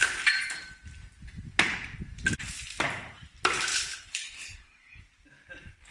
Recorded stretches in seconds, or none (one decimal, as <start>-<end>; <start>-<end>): 0.0-3.7; 5.0-5.9